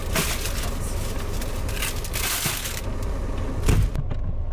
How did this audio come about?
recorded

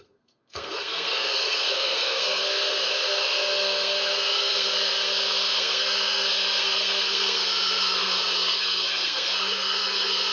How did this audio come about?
remade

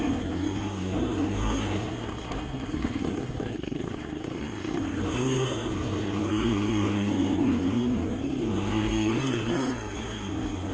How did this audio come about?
remade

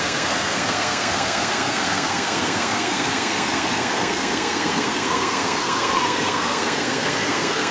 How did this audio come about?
remade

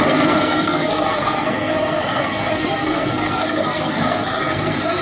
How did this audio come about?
remade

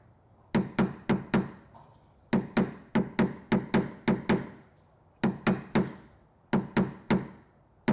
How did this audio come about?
recorded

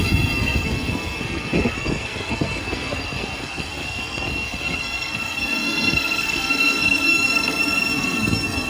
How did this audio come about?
remade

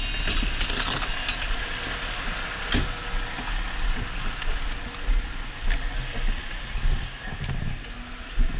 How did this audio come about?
recorded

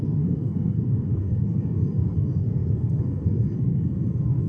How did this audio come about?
remade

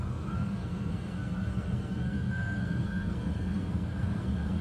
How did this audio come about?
remade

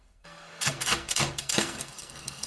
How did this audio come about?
remade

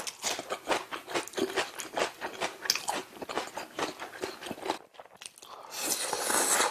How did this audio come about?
recorded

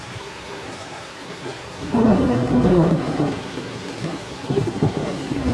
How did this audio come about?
remade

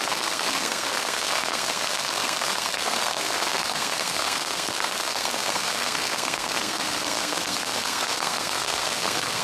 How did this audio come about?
remade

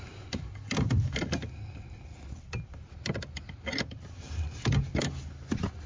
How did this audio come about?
recorded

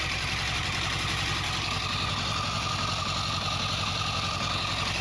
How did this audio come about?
recorded